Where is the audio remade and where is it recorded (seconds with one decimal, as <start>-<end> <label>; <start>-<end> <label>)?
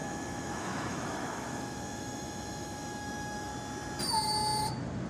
0.0-3.5 remade; 3.5-5.1 recorded